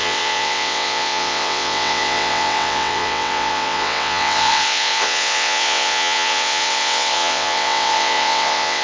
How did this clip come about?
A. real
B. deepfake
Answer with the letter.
B